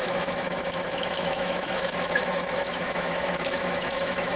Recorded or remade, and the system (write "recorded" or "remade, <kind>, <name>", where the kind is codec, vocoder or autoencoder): remade, autoencoder, DAC-VAE